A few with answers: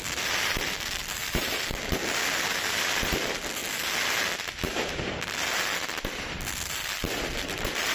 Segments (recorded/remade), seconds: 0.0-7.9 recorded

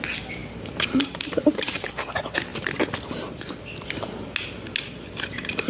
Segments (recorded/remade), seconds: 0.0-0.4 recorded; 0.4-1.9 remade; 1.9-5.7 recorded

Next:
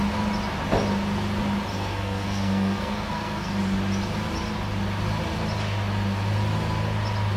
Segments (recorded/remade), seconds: 0.0-1.7 recorded; 1.7-3.5 remade; 3.5-7.4 recorded